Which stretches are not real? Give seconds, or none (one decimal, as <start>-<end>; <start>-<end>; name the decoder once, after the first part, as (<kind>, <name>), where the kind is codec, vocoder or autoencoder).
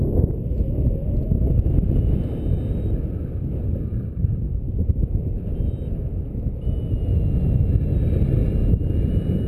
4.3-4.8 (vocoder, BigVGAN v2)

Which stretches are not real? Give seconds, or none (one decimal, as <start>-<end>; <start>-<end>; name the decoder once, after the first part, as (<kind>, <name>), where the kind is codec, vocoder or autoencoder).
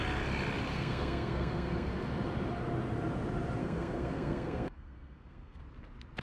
0.7-2.1 (codec, SNAC); 3.6-5.6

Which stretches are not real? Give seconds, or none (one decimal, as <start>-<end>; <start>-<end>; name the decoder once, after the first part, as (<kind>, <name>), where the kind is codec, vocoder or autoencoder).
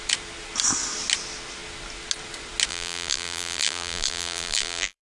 2.7-5.0 (vocoder, BigVGAN v2)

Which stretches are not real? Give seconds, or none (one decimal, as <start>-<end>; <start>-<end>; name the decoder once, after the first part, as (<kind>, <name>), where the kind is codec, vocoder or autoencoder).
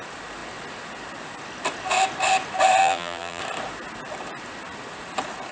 2.8-3.4 (vocoder, BigVGAN v2)